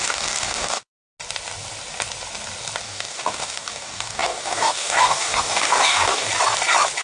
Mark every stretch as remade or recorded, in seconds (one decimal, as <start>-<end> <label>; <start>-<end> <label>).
0.0-0.9 remade; 0.9-2.8 recorded; 2.8-6.3 remade; 6.3-7.0 recorded